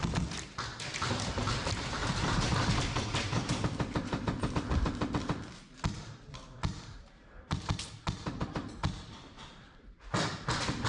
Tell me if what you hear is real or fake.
fake